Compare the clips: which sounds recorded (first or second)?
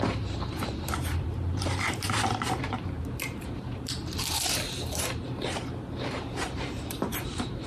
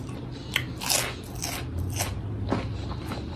second